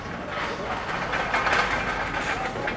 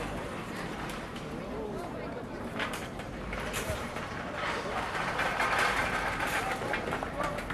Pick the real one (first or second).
first